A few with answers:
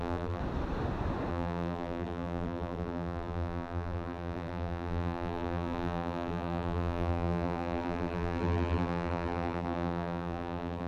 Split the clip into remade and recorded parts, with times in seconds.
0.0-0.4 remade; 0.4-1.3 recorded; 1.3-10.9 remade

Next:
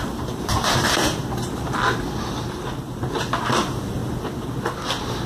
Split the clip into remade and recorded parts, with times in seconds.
0.0-1.2 remade; 1.2-3.6 recorded; 3.6-4.0 remade; 4.0-5.3 recorded

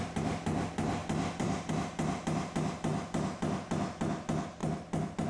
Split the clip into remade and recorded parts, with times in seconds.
0.0-1.0 recorded; 1.0-1.7 remade; 1.7-5.3 recorded

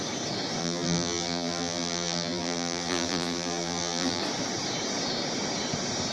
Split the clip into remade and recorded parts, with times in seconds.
0.0-0.6 recorded; 0.6-4.2 remade; 4.2-6.1 recorded

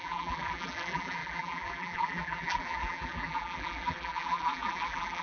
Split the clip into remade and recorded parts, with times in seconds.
0.0-5.2 remade

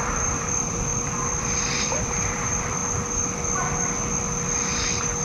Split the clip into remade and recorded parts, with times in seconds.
0.0-2.8 remade; 2.8-5.2 recorded